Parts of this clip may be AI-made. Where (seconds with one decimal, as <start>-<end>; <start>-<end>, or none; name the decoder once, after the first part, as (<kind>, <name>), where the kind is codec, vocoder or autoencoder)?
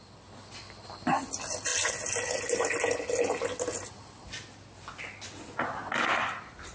none